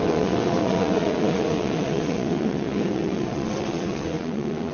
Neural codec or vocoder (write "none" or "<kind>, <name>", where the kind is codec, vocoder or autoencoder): vocoder, WaveNeXt